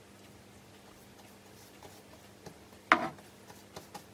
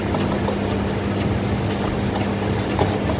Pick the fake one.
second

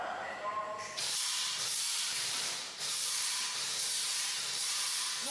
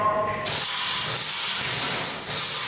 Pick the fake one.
first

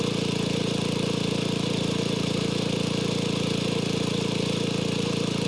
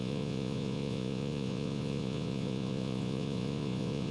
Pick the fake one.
second